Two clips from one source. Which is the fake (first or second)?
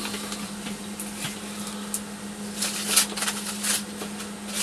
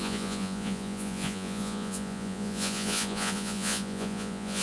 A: second